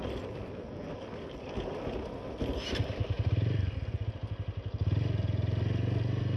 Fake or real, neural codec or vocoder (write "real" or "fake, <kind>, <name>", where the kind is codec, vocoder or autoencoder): real